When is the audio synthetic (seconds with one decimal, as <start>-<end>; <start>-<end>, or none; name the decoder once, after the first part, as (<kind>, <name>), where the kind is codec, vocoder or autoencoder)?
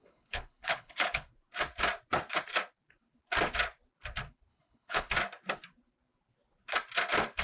0.0-1.3 (codec, HILCodec); 4.5-5.1